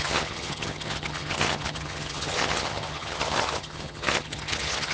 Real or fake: fake